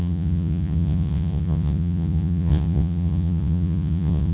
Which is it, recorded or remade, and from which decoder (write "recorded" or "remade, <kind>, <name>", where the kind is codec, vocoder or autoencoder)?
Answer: remade, vocoder, Vocos